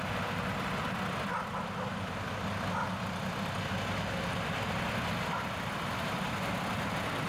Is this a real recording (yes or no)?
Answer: yes